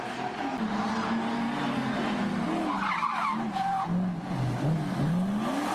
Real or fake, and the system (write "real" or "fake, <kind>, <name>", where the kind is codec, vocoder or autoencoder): real